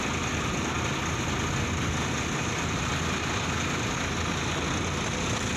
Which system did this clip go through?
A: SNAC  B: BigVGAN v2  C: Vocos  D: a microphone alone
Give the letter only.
D